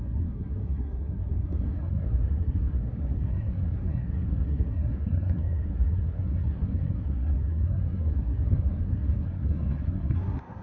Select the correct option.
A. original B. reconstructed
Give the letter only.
B